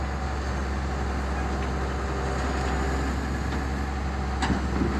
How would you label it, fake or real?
real